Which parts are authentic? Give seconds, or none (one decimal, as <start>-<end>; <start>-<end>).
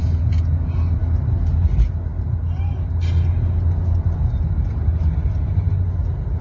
0.0-2.1; 2.9-6.4